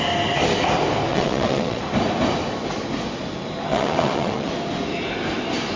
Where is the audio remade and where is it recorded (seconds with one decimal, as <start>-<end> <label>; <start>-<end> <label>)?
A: 0.0-1.1 recorded; 1.1-1.8 remade; 1.8-3.7 recorded; 3.7-4.5 remade; 4.5-5.8 recorded